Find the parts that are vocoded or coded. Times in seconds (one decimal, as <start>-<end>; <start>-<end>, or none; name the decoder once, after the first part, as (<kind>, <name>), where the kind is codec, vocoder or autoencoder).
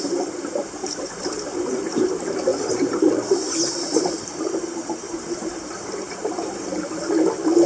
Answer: 0.8-2.1 (vocoder, BigVGAN v2); 2.5-7.1